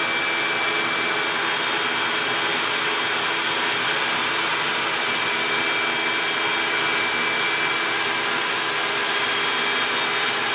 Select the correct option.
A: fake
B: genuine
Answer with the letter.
B